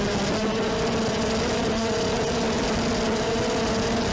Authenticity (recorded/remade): recorded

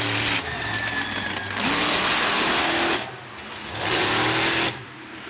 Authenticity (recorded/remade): recorded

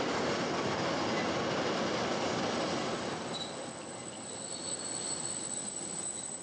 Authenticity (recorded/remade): recorded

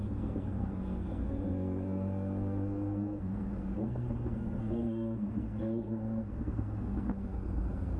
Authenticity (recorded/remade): remade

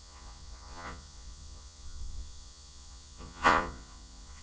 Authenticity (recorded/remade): remade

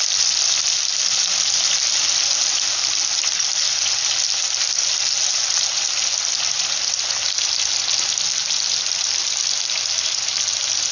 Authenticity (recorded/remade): recorded